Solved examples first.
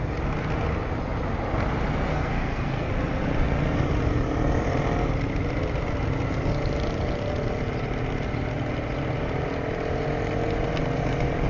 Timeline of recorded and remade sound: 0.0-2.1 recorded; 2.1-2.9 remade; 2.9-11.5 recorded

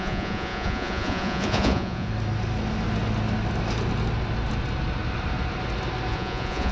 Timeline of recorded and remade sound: 0.0-2.1 remade; 2.1-6.1 recorded; 6.1-6.7 remade

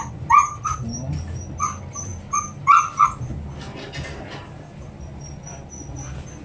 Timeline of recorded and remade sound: 0.0-6.4 recorded

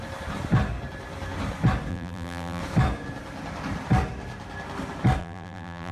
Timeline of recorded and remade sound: 0.0-1.9 recorded; 1.9-2.6 remade; 2.6-5.2 recorded; 5.2-5.9 remade

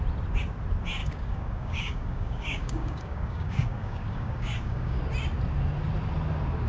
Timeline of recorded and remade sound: 0.0-1.0 recorded; 1.0-5.0 remade; 5.0-6.7 recorded

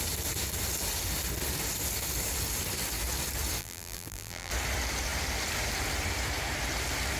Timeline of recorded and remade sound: 0.0-3.6 recorded; 3.6-4.5 remade; 4.5-7.2 recorded

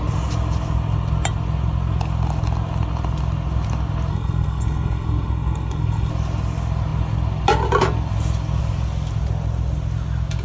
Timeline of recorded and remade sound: 0.0-4.1 recorded; 4.1-6.1 remade; 6.1-10.4 recorded

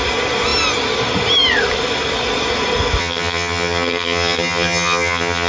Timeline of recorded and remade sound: 0.0-3.0 recorded; 3.0-5.5 remade